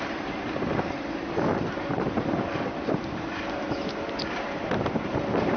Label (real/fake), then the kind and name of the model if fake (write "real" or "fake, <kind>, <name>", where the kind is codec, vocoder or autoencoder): fake, vocoder, BigVGAN v2